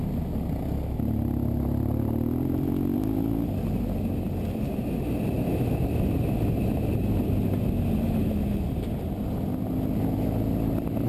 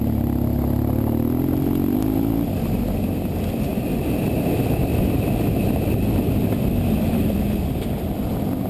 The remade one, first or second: second